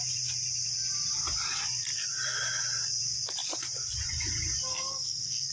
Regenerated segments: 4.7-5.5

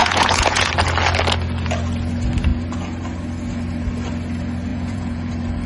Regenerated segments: 0.0-0.7; 4.7-5.3

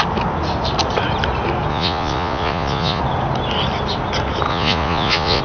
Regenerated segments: 1.7-3.0; 4.5-5.4

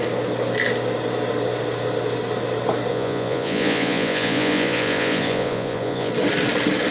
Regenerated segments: 2.9-6.1

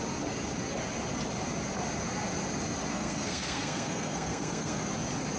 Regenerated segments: 2.9-4.8

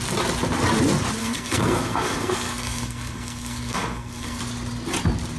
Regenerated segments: 1.2-4.4